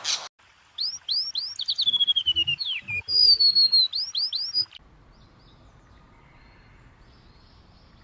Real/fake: real